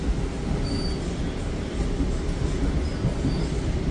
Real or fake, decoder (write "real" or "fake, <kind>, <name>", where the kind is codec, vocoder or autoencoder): real